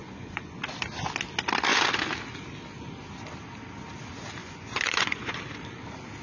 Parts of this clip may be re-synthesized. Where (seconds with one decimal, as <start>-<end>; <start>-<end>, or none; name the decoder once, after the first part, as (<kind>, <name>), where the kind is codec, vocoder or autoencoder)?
0.0-0.6 (vocoder, Vocos); 4.4-5.4